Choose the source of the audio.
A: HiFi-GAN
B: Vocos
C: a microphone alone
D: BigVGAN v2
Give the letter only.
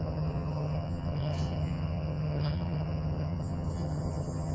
A